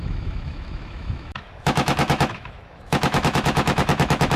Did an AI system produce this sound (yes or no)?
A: yes